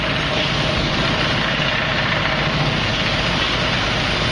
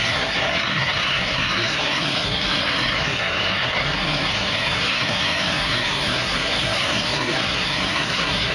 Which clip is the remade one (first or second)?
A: second